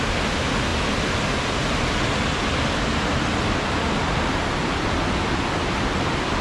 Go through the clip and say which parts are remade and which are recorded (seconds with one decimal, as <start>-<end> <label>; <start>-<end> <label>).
0.0-6.4 recorded